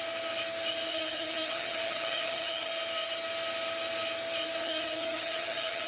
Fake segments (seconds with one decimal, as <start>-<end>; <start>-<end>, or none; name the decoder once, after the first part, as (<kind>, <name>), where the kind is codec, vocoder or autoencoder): 0.9-2.7 (vocoder, HiFi-GAN); 4.6-5.9